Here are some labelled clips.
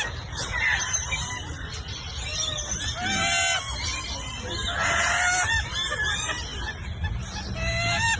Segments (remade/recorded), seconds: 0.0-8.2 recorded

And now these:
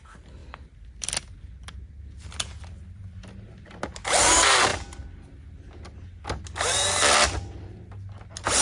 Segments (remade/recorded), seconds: 0.0-8.6 recorded

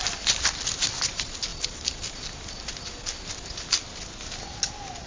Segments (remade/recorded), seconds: 0.0-5.1 recorded

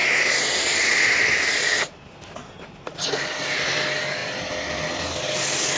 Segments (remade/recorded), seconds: 0.0-5.8 recorded